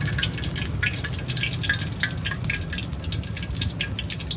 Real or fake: real